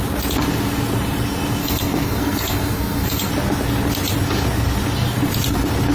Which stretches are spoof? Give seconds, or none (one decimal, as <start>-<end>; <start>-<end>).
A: 1.6-3.3